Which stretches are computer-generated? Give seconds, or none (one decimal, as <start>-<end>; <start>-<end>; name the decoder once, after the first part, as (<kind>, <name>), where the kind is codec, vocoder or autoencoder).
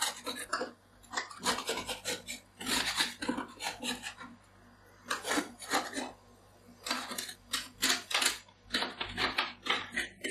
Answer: none